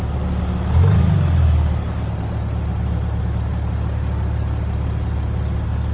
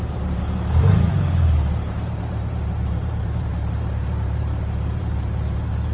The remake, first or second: second